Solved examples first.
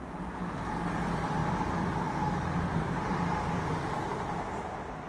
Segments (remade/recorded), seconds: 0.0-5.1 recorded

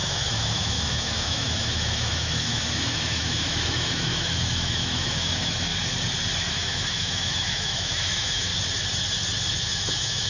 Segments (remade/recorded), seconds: 0.0-5.7 remade; 5.7-6.5 recorded; 6.5-8.5 remade; 8.5-9.6 recorded; 9.6-10.3 remade

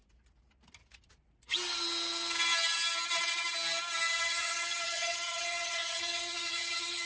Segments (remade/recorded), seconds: 0.0-4.3 recorded; 4.3-7.1 remade

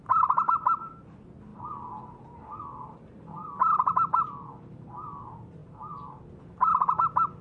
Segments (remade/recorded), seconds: 0.0-5.6 recorded; 5.6-6.4 remade; 6.4-7.4 recorded

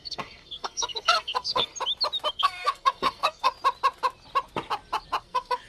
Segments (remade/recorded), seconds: 0.0-1.7 remade; 1.7-2.3 recorded; 2.3-3.5 remade; 3.5-5.2 recorded; 5.2-5.7 remade